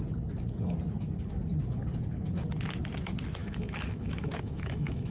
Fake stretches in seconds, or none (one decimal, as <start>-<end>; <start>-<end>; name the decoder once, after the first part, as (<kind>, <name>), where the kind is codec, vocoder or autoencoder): 3.4-5.1 (autoencoder, DAC-VAE)